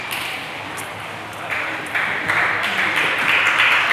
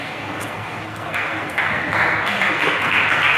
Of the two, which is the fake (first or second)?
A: second